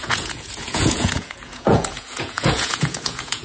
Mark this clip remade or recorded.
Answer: remade